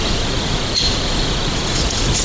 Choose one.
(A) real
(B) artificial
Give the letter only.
B